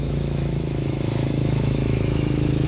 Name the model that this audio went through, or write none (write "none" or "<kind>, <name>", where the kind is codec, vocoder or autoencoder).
autoencoder, DAC-VAE